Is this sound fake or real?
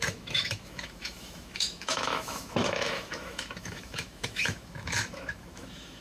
fake